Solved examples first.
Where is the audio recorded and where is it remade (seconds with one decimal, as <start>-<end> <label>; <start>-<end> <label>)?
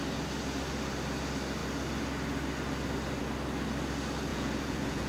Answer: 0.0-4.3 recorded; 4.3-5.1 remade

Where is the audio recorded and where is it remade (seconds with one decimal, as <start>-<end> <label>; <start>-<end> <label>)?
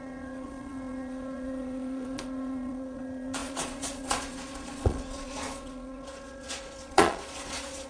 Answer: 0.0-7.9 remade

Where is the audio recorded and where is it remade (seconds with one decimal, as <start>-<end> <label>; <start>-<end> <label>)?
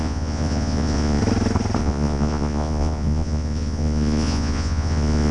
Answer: 0.0-1.2 remade; 1.2-1.8 recorded; 1.8-5.3 remade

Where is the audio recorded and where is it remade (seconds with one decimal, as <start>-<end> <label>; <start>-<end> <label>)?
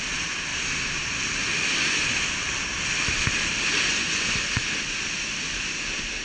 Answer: 0.0-3.9 recorded; 3.9-4.6 remade; 4.6-6.2 recorded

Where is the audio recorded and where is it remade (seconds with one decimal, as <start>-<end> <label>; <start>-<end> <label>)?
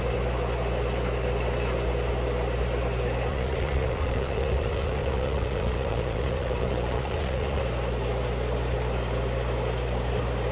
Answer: 0.0-3.3 recorded; 3.3-7.6 remade; 7.6-10.5 recorded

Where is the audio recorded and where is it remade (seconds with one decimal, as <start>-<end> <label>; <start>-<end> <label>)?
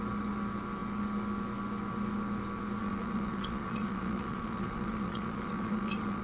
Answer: 0.0-2.8 recorded; 2.8-6.2 remade